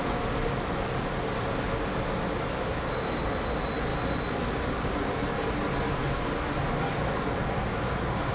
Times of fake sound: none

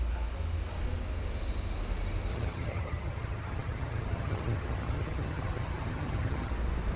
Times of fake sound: 2.3-6.5 (vocoder, HiFi-GAN)